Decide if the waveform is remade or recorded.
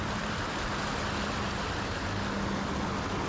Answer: recorded